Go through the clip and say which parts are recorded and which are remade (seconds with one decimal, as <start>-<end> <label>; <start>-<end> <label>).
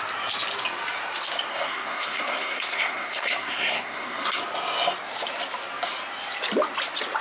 0.0-1.5 recorded; 1.5-4.4 remade; 4.4-7.2 recorded